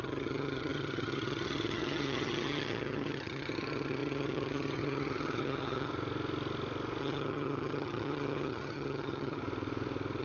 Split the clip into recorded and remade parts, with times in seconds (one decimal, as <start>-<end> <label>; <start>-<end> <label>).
0.0-5.9 remade; 5.9-7.0 recorded; 7.0-9.4 remade; 9.4-10.2 recorded